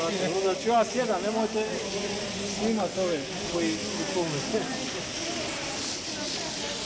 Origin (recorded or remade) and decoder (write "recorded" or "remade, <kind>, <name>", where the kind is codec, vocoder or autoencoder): recorded